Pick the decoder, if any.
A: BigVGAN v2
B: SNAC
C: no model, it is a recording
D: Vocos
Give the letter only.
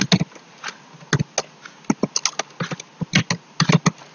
C